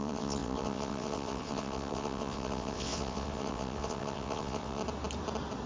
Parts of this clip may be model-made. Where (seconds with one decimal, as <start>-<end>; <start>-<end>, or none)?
0.0-4.8